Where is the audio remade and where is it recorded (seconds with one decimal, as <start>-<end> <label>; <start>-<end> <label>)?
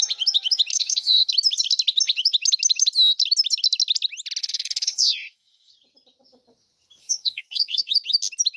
0.0-0.7 recorded; 0.7-1.3 remade; 1.3-4.4 recorded; 4.4-5.7 remade; 5.7-7.0 recorded; 7.0-7.9 remade; 7.9-8.6 recorded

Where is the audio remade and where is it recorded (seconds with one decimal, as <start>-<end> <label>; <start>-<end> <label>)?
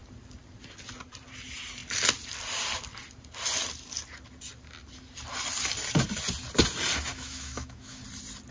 0.0-7.1 recorded; 7.1-8.0 remade; 8.0-8.5 recorded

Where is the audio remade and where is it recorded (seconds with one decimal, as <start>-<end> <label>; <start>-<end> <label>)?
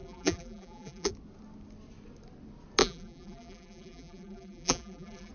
0.0-1.1 remade; 1.1-2.8 recorded; 2.8-5.3 remade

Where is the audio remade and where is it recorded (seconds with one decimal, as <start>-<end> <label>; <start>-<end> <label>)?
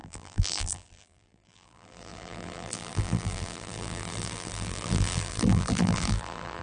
0.0-6.6 remade